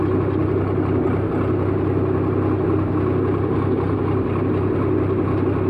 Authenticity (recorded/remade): recorded